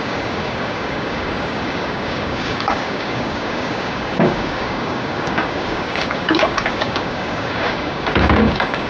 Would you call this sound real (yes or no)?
no